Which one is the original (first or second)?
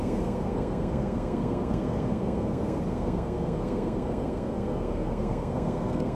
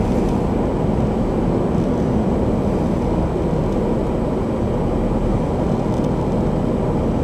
second